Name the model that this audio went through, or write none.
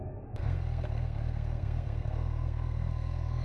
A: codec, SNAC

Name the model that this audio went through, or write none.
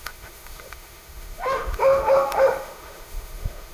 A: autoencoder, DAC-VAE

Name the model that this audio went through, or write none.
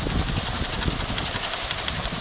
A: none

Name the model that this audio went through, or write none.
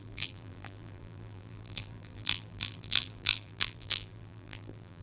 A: vocoder, BigVGAN v2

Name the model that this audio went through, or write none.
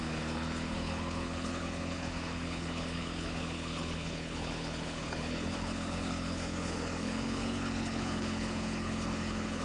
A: codec, HILCodec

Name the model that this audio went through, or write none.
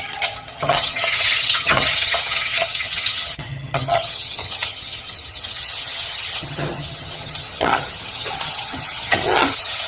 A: vocoder, HiFi-GAN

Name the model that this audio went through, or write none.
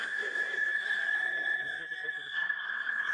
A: codec, SNAC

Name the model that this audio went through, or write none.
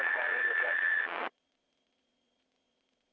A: vocoder, Vocos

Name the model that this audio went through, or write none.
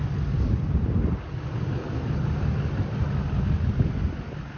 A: none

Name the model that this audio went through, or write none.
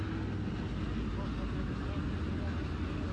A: none